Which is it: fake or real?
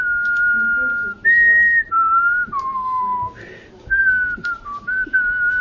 real